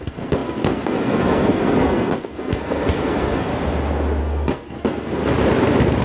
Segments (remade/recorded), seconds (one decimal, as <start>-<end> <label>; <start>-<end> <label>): 0.0-3.5 remade; 3.5-4.2 recorded; 4.2-5.2 remade; 5.2-6.0 recorded

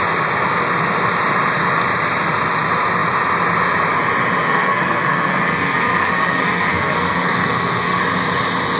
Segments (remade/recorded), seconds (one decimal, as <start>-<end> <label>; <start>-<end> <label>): 0.0-4.4 recorded; 4.4-8.0 remade; 8.0-8.8 recorded

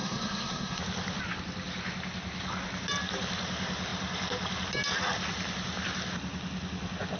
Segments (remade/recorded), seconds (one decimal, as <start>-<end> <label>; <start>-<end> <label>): 0.0-0.8 remade; 0.8-7.2 recorded

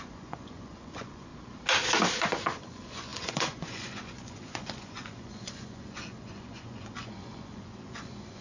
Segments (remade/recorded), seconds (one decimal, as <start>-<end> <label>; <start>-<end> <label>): 0.0-1.3 remade; 1.3-2.2 recorded; 2.2-8.4 remade

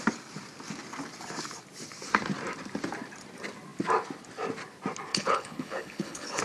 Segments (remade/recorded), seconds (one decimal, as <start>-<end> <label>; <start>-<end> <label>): 0.0-5.1 recorded; 5.1-6.4 remade

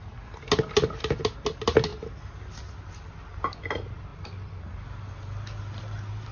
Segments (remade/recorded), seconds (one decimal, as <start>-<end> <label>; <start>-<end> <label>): 0.0-6.3 recorded